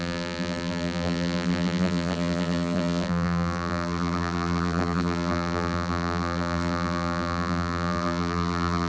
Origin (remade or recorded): remade